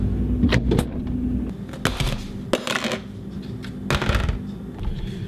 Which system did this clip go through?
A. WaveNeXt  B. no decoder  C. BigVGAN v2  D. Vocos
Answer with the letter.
B